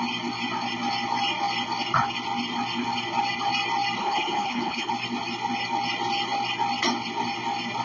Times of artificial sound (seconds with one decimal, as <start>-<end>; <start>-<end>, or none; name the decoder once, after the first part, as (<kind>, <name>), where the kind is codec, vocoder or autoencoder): 4.0-4.9 (codec, HILCodec)

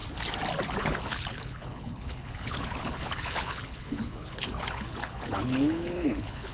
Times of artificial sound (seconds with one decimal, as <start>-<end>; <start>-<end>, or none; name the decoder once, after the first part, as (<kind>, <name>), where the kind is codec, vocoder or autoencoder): 0.8-6.5 (codec, HILCodec)

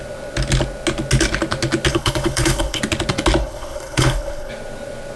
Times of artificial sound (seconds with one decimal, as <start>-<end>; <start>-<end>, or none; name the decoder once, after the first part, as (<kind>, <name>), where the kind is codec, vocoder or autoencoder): 1.9-2.8 (codec, HILCodec); 3.4-4.5